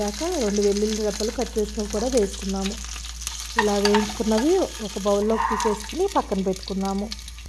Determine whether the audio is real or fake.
real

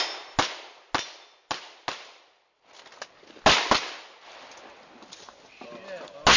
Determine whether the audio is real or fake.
real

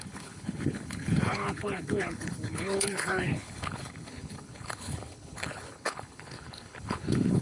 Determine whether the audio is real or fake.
fake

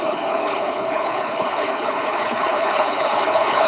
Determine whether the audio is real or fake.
fake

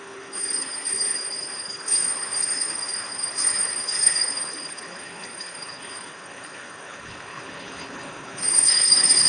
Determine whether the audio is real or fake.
fake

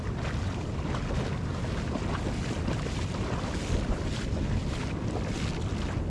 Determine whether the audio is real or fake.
real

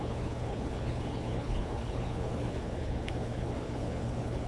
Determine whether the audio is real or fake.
fake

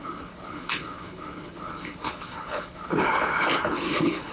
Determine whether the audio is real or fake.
fake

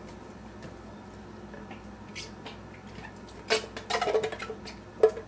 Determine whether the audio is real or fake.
real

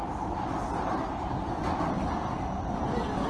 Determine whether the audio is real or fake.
real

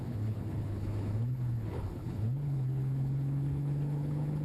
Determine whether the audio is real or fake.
fake